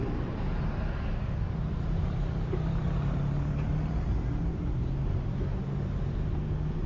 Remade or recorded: recorded